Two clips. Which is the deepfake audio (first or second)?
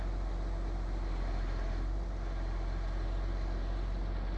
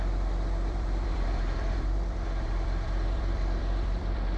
second